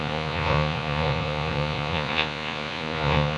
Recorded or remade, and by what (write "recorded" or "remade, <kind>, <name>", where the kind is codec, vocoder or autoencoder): remade, vocoder, Vocos